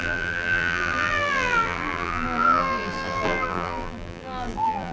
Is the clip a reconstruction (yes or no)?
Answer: yes